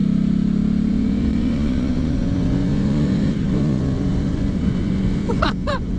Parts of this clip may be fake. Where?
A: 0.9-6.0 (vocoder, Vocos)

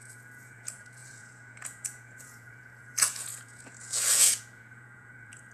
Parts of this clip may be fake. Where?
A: 0.0-5.5 (vocoder, Vocos)

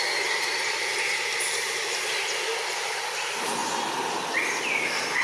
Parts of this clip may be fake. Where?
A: none

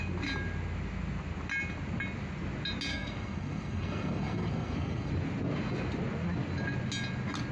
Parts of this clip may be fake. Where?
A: 2.9-5.1 (codec, SNAC)

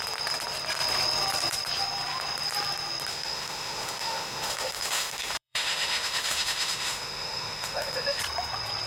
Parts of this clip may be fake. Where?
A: 3.1-8.2 (autoencoder, DAC-VAE)

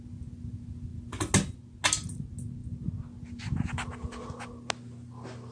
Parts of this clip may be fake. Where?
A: none

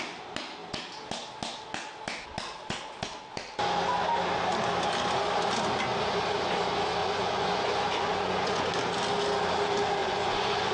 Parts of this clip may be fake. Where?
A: 7.0-8.7 (vocoder, Vocos); 10.0-10.7

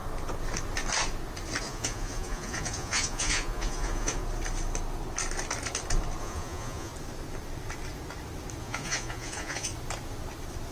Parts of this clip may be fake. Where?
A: 1.6-4.2 (vocoder, Vocos); 6.2-6.9; 8.6-9.7